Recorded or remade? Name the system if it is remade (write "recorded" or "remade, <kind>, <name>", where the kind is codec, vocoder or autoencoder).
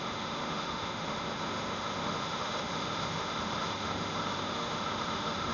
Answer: remade, autoencoder, DAC-VAE